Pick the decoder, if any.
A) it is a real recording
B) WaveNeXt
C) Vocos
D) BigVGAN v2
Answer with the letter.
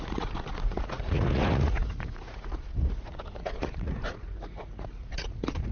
C